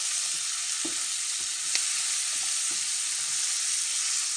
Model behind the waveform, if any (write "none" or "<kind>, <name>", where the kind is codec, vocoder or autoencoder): none